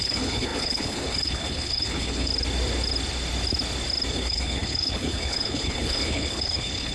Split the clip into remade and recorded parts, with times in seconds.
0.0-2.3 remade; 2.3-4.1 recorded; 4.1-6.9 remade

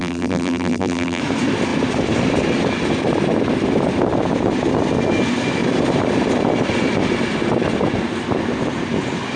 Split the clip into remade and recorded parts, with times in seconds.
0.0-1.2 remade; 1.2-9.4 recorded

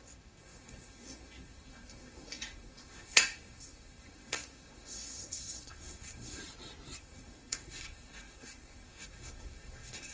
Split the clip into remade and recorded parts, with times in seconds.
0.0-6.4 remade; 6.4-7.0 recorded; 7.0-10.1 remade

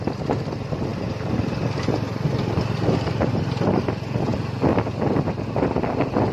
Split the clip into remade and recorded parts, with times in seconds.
0.0-6.3 recorded